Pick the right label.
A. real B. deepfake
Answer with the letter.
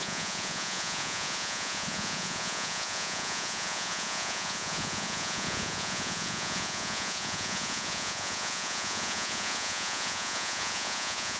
B